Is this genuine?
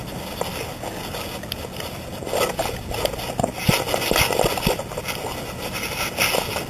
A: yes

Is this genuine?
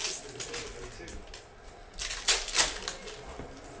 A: yes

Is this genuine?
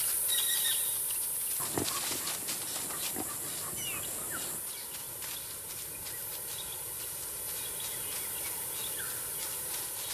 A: yes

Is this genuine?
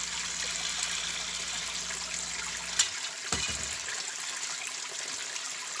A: yes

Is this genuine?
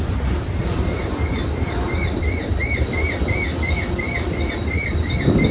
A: no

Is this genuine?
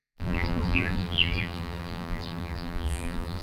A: no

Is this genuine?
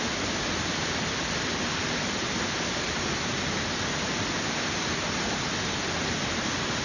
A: no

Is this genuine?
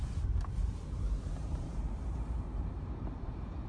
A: no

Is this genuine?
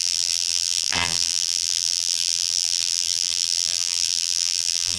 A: no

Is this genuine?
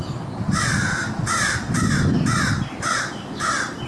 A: no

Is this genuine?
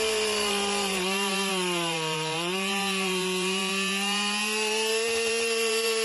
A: no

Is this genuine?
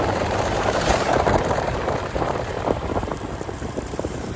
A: no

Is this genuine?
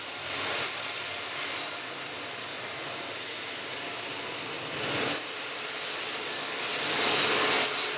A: yes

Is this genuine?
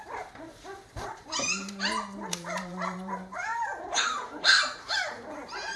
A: no